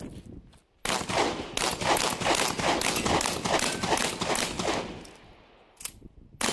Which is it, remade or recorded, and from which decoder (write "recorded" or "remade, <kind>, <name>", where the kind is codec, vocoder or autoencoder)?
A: recorded